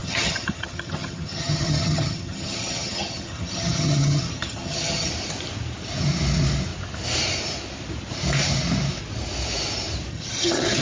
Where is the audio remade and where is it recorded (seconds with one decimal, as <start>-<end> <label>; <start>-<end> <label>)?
0.0-5.1 remade; 5.1-10.1 recorded; 10.1-10.8 remade